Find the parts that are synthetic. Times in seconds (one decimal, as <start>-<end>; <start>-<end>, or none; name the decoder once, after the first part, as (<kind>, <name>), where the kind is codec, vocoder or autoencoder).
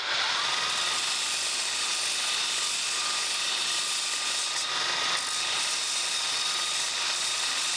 none